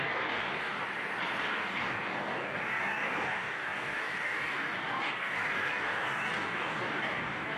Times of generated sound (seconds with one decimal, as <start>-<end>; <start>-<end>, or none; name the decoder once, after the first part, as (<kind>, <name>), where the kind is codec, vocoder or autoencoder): 0.0-0.8 (codec, DAC); 1.4-7.6